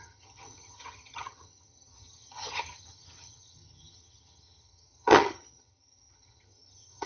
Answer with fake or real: fake